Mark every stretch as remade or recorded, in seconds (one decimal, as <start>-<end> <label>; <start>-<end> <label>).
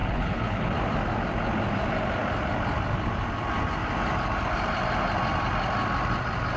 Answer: 0.0-0.7 remade; 0.7-6.6 recorded